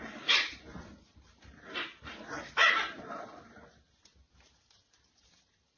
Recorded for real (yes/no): no